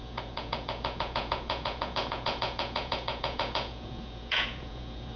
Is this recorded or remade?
remade